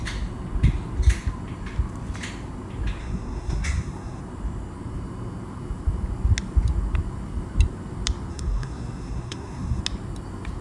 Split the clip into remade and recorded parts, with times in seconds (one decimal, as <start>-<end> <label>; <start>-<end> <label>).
0.0-3.0 recorded; 3.0-4.2 remade; 4.2-8.3 recorded; 8.3-9.8 remade; 9.8-10.6 recorded